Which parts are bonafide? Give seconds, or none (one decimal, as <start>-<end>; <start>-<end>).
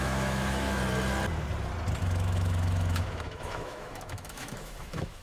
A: 0.8-2.0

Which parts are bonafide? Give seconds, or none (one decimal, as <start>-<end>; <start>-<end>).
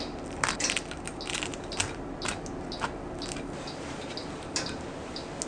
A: 0.0-5.5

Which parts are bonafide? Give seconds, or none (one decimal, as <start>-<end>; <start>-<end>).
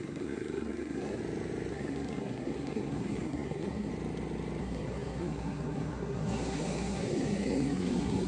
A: 1.2-1.7; 3.9-4.6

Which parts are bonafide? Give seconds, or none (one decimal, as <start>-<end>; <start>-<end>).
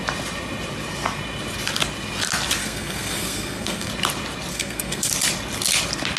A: 0.0-2.6; 3.9-4.5; 5.1-6.2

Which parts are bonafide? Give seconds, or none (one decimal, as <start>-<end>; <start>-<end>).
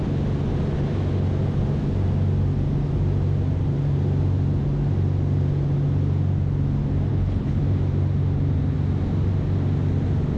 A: 0.0-7.1; 7.6-10.4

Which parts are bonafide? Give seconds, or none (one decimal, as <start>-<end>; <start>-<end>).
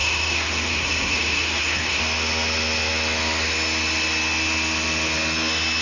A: 2.0-5.8